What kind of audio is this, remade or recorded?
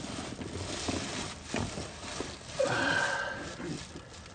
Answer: recorded